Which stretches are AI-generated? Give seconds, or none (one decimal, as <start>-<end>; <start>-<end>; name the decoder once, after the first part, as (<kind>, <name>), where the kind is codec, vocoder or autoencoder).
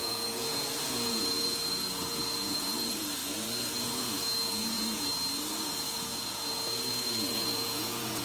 0.0-3.2 (vocoder, Vocos); 3.7-5.1; 5.6-8.2